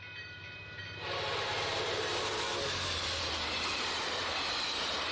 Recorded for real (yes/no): no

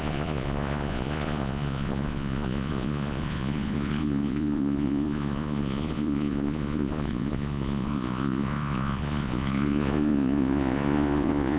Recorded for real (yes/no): no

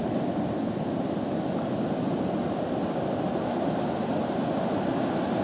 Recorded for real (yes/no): yes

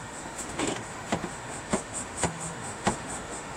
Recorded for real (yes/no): no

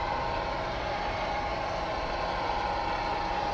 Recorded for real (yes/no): yes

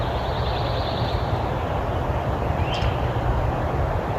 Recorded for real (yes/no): yes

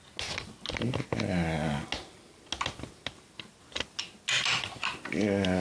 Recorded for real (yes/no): yes